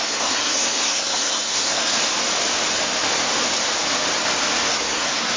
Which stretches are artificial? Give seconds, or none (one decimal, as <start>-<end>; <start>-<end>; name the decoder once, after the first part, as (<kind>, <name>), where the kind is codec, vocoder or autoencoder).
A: 0.0-1.9 (codec, SNAC); 4.7-5.4